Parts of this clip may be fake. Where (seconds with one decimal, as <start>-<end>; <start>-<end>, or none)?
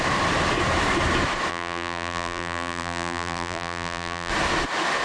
1.5-4.3